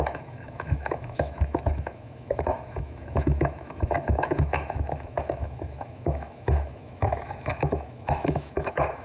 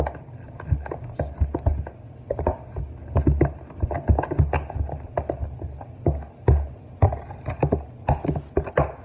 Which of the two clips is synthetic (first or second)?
first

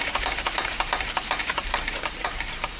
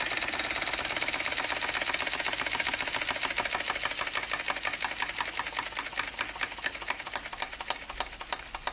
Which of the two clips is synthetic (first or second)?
first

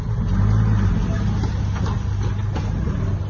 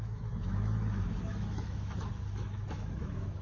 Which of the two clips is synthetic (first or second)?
second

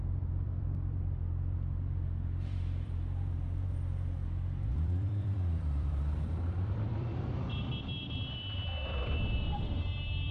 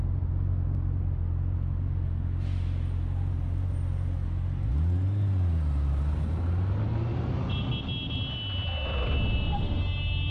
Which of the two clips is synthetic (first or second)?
first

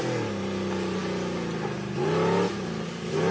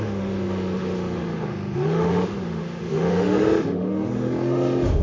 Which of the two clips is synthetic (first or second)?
second